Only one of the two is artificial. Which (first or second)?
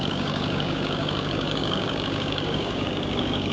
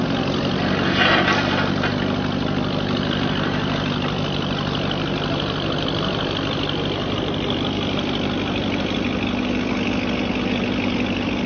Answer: first